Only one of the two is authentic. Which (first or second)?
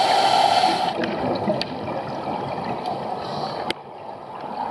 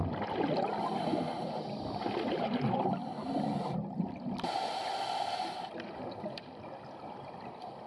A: first